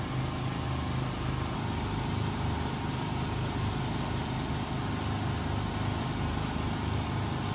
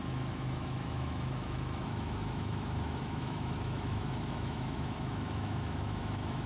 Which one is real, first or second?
first